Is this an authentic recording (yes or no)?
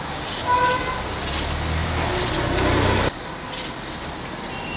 yes